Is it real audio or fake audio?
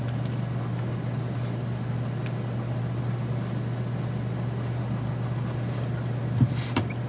real